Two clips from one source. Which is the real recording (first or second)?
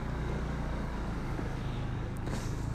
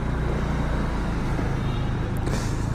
second